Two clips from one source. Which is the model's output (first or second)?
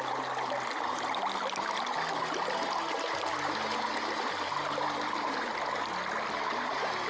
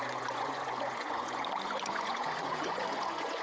second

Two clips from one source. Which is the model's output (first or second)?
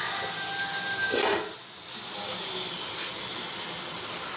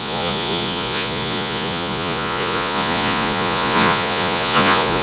second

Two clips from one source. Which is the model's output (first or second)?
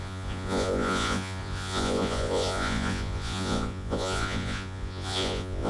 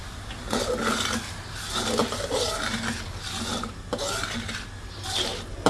first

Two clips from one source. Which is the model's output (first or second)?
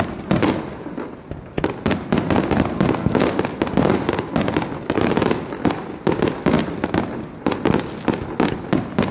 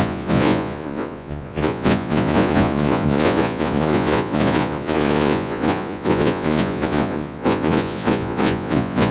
second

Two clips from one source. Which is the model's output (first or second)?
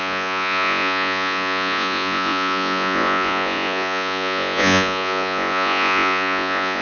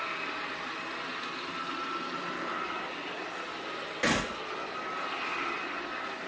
first